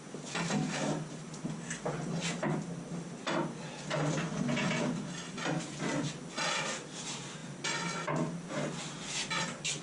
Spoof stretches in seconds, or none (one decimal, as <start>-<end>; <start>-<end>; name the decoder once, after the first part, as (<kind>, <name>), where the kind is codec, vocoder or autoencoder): none